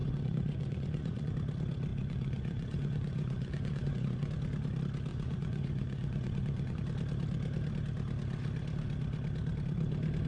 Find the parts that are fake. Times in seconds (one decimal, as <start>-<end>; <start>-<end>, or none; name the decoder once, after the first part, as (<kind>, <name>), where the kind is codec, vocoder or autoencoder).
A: 0.0-1.3 (vocoder, Vocos); 1.9-4.3; 5.1-6.8